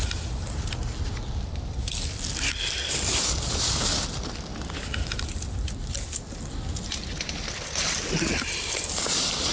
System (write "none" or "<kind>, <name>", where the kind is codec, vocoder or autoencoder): none